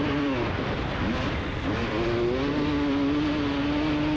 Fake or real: real